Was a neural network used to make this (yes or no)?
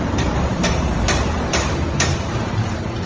yes